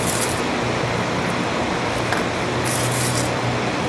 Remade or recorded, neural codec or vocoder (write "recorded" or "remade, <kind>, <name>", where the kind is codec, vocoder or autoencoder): recorded